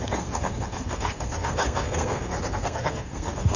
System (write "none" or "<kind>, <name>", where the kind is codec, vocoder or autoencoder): codec, SNAC